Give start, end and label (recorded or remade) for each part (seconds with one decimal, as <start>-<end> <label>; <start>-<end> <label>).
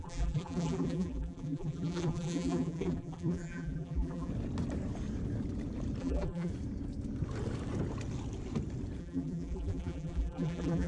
0.0-4.3 remade; 4.3-6.0 recorded; 6.0-6.5 remade; 6.5-9.0 recorded; 9.0-10.9 remade